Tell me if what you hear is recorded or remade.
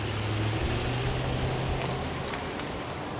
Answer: recorded